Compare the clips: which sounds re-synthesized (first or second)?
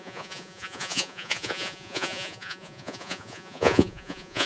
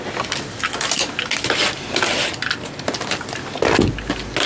first